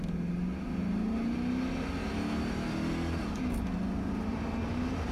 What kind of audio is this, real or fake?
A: real